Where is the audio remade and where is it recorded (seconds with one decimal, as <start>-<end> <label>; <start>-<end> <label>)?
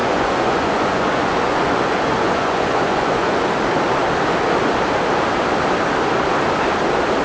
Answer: 0.0-3.4 remade; 3.4-7.2 recorded